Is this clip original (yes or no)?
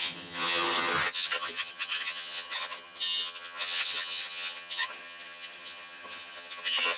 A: no